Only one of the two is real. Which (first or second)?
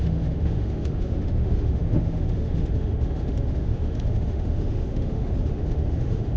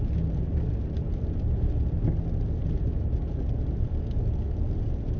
second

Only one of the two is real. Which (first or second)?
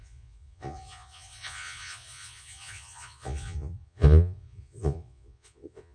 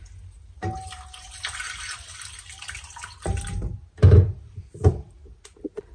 second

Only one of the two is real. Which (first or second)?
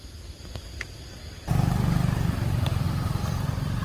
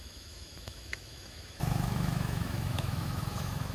first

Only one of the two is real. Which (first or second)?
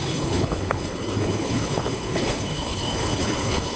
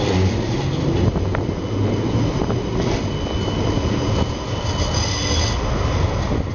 second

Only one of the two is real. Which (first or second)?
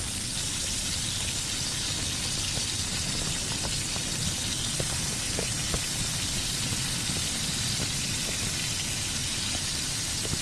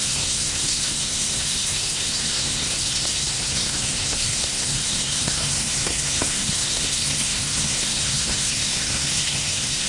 first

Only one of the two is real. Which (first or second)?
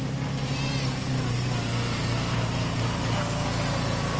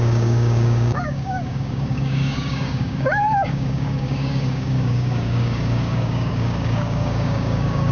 first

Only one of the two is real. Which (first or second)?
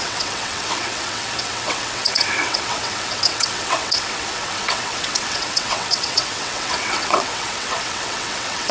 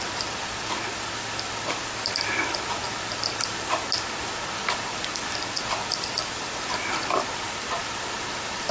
second